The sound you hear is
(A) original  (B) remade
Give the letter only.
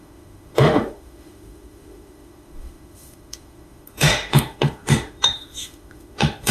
B